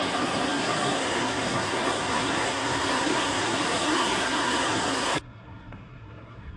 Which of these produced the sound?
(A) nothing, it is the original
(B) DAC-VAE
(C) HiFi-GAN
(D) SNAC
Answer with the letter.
D